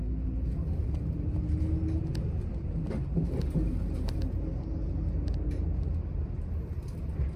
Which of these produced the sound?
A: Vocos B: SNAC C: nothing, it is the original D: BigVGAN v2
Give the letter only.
C